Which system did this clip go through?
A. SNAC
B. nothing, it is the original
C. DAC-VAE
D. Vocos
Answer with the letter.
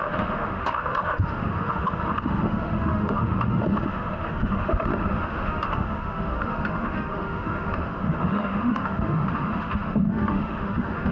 C